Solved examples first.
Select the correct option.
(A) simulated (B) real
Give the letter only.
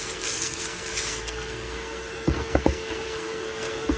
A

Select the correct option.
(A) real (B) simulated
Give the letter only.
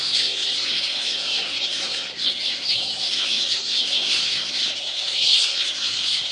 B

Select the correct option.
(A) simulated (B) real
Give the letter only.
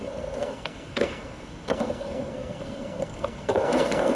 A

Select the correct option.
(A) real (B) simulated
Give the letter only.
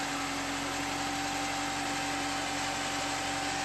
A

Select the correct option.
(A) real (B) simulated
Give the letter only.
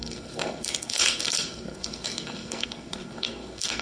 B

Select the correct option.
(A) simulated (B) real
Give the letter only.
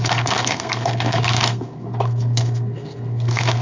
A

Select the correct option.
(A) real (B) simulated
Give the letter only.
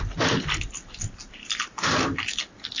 A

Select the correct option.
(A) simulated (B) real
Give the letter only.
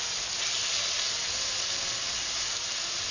B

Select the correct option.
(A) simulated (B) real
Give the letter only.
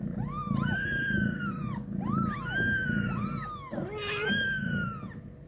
B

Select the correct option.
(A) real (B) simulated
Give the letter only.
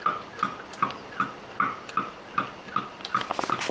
A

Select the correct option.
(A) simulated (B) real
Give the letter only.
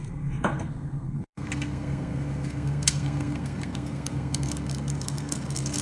A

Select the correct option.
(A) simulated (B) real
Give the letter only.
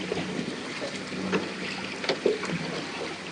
B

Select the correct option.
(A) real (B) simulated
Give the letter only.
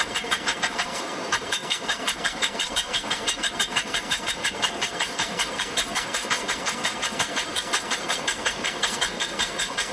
B